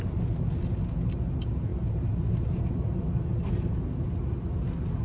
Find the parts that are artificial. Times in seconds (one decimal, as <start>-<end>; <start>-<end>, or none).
none